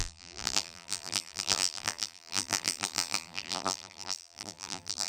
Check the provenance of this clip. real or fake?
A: fake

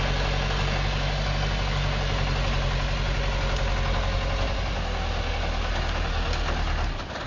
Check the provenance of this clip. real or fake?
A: real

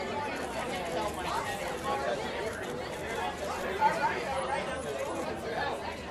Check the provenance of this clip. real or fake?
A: real